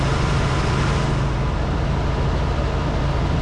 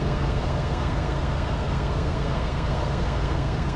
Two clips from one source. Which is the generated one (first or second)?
second